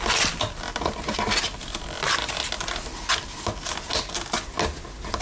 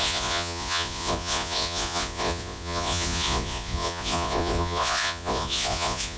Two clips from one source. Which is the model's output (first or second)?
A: second